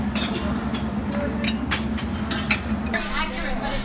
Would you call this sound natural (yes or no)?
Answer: yes